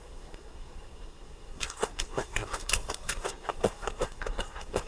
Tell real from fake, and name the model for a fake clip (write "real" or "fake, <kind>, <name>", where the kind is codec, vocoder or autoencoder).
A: fake, codec, SNAC